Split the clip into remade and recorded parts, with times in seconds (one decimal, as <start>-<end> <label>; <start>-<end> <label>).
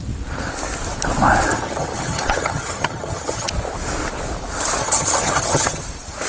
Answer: 0.0-1.5 recorded; 1.5-3.5 remade; 3.5-4.8 recorded; 4.8-5.8 remade; 5.8-6.3 recorded